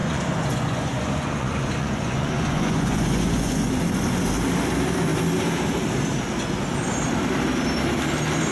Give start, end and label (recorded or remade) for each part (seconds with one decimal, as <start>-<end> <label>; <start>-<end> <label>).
0.0-3.7 remade; 3.7-8.5 recorded

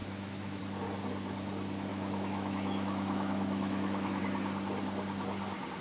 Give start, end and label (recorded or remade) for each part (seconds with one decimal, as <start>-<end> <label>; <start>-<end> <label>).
0.0-0.6 remade; 0.6-1.9 recorded; 1.9-4.2 remade; 4.2-5.8 recorded

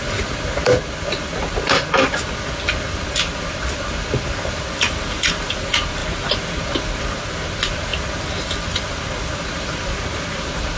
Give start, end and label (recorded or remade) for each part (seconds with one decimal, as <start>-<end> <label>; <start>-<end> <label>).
0.0-6.0 remade; 6.0-6.6 recorded; 6.6-7.9 remade; 7.9-9.4 recorded; 9.4-10.8 remade

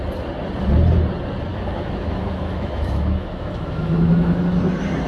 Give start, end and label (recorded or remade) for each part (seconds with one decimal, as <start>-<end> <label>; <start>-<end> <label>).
0.0-1.5 recorded; 1.5-4.6 remade; 4.6-5.1 recorded

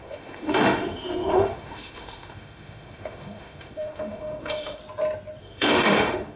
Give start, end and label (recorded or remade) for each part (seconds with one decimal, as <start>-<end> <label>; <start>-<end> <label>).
0.0-4.8 remade; 4.8-5.4 recorded; 5.4-6.4 remade